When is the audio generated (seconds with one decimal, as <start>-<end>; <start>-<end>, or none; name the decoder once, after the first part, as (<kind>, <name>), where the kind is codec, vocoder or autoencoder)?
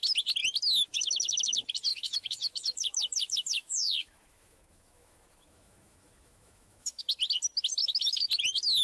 1.9-7.0 (autoencoder, DAC-VAE)